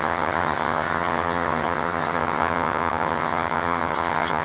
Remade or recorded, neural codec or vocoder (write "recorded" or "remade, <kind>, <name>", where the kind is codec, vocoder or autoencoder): remade, vocoder, HiFi-GAN